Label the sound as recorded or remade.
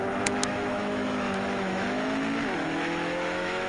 remade